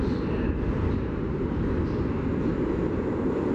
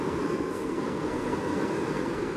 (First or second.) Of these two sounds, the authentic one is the first